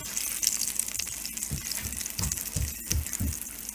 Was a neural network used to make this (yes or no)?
no